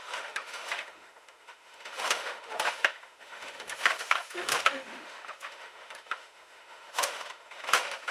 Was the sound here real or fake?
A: fake